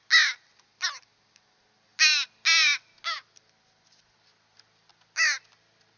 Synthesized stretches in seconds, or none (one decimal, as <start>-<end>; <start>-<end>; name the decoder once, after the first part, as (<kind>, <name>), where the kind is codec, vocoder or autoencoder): none